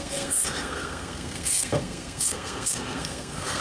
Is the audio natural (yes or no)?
no